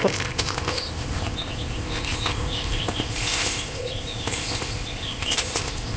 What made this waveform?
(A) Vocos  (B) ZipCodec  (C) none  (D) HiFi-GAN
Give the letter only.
B